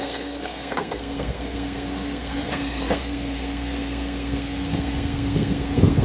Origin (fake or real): fake